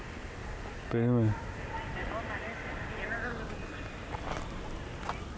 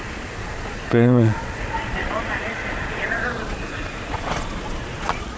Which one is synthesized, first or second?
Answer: second